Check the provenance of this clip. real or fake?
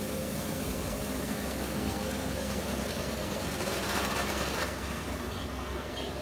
fake